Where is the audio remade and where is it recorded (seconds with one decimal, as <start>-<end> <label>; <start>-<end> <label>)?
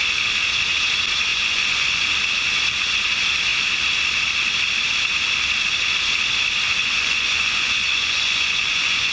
0.0-1.3 recorded; 1.3-2.1 remade; 2.1-6.8 recorded; 6.8-9.1 remade